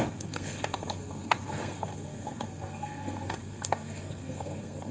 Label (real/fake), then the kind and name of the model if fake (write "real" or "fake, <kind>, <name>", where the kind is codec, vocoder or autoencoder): fake, codec, SNAC